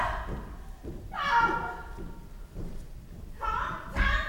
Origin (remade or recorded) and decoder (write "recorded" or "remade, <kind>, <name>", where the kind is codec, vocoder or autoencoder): recorded